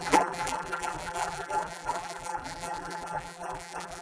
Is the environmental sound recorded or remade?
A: remade